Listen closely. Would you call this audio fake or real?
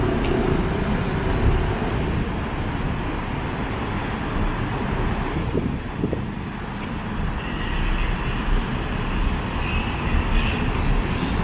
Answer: real